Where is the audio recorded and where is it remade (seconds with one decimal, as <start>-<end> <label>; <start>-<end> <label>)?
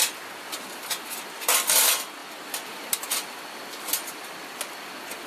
0.0-5.3 recorded